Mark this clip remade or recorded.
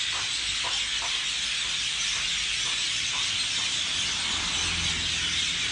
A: recorded